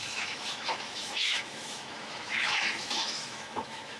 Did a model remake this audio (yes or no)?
yes